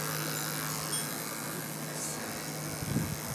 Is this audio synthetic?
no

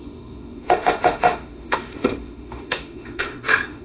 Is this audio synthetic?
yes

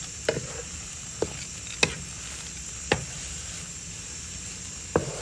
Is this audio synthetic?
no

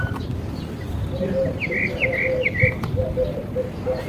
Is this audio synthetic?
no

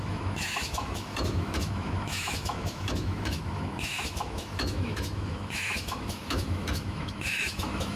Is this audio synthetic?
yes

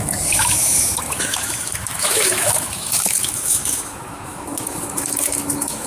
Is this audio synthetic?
yes